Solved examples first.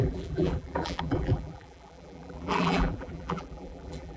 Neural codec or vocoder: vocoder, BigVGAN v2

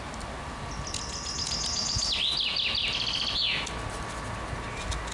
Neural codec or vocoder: none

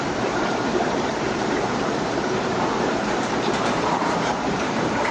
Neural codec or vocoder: vocoder, BigVGAN v2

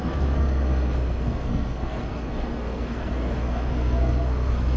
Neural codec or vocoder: codec, SNAC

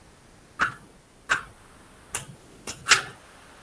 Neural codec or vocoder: none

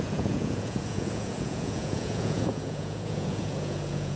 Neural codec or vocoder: vocoder, Vocos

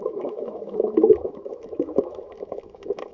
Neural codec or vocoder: autoencoder, DAC-VAE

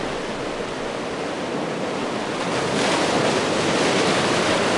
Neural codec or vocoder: none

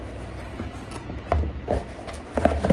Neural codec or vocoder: none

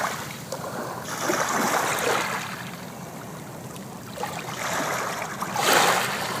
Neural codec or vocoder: none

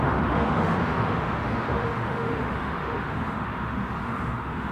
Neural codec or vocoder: autoencoder, DAC-VAE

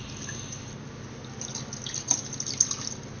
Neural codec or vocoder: none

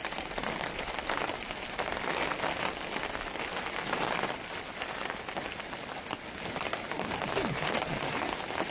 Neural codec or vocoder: none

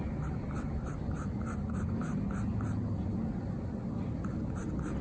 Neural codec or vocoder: none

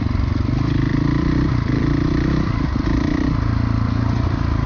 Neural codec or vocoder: vocoder, BigVGAN v2